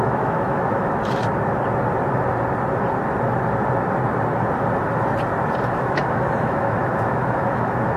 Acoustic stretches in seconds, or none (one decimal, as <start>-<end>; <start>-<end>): 1.2-5.6